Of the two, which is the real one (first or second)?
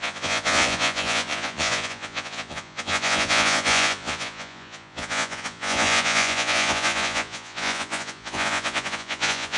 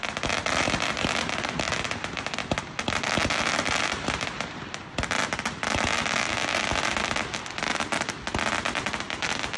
second